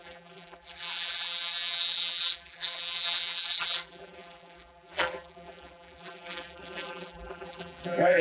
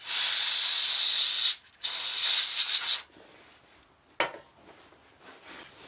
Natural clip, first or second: second